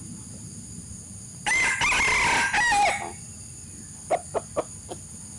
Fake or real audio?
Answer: real